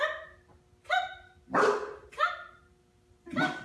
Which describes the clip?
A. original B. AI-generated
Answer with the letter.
A